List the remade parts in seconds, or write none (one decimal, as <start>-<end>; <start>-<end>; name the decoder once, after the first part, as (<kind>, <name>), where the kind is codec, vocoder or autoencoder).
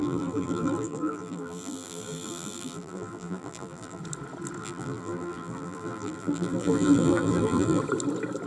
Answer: 0.0-4.0 (vocoder, BigVGAN v2); 4.6-7.8